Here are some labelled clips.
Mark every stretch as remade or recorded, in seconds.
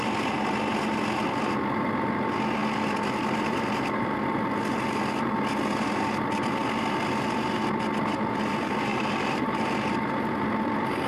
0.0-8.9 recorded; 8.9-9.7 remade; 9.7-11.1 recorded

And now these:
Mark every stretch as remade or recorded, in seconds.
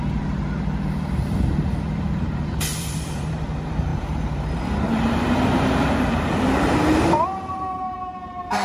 0.0-8.6 remade